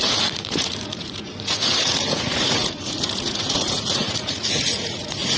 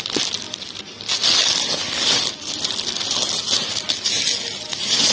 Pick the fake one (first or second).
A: first